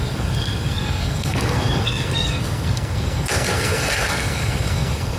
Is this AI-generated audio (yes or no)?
yes